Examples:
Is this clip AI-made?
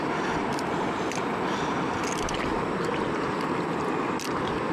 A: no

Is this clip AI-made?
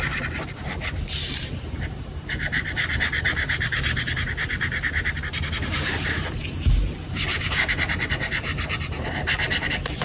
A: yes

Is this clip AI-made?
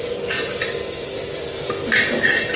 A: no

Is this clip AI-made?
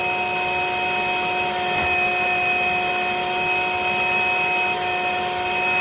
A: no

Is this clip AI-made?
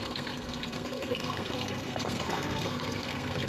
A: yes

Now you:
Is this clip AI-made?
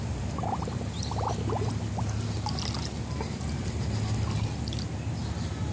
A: no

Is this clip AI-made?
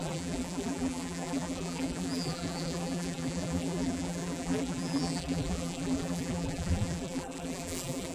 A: yes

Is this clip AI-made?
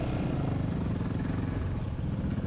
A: no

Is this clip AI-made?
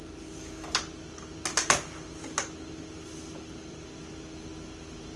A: no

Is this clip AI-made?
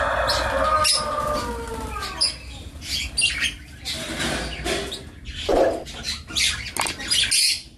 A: no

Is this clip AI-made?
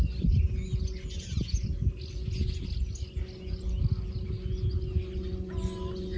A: no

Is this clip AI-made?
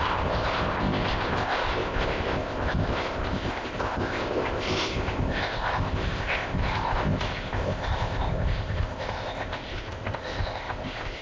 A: yes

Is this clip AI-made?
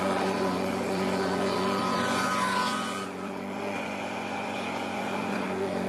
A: yes